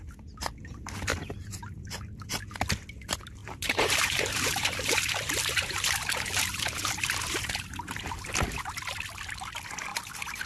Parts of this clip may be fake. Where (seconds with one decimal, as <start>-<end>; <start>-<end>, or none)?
1.1-2.4; 3.4-7.9